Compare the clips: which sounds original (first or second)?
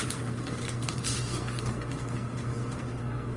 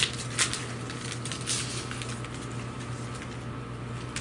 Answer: second